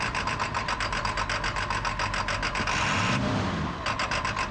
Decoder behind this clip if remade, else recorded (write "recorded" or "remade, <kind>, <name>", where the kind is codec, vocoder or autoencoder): recorded